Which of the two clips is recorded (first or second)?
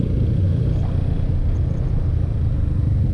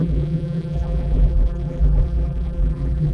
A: first